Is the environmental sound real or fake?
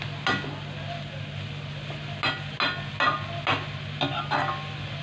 real